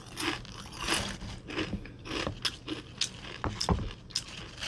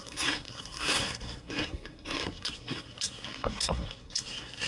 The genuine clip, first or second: first